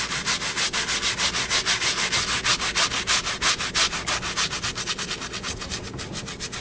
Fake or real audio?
real